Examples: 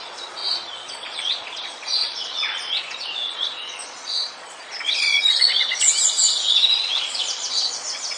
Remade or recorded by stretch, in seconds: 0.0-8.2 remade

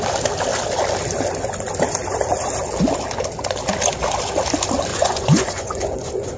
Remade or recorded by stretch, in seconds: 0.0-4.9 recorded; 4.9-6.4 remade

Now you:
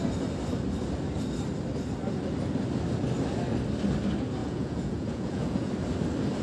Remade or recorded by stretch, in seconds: 0.0-4.4 recorded; 4.4-5.7 remade; 5.7-6.4 recorded

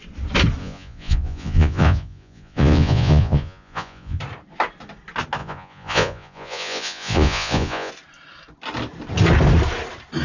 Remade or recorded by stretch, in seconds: 0.0-0.6 recorded; 0.6-4.2 remade; 4.2-5.4 recorded; 5.4-7.9 remade; 7.9-10.2 recorded

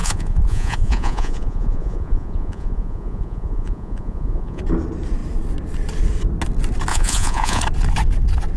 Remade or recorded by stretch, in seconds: 0.0-4.6 remade; 4.6-6.9 recorded; 6.9-7.6 remade; 7.6-8.6 recorded